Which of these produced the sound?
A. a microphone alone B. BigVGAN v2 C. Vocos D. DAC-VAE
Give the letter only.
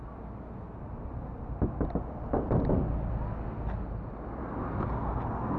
A